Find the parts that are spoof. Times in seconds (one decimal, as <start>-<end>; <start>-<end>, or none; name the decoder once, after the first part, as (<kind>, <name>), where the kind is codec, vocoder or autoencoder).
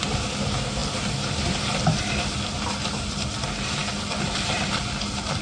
none